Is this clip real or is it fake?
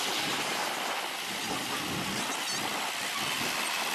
real